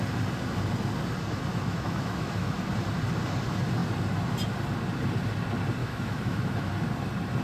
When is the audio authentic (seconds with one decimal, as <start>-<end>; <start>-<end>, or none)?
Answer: 0.0-1.5; 2.7-5.8; 6.7-7.4